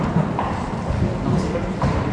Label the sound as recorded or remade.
recorded